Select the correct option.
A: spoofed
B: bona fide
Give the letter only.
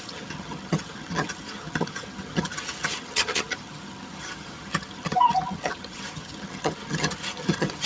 A